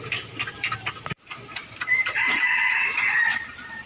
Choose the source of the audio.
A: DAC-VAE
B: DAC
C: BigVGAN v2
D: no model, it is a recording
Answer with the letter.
C